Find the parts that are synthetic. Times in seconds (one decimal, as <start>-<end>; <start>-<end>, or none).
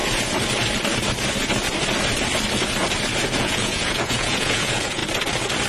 3.4-5.0